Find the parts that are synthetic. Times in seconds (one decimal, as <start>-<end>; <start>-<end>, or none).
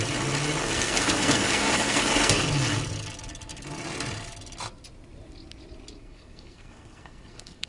0.6-2.4; 6.0-7.7